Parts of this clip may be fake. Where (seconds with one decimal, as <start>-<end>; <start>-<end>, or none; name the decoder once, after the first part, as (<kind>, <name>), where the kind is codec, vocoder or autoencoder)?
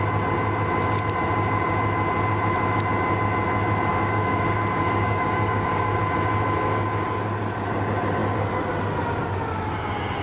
3.9-6.0 (codec, DAC)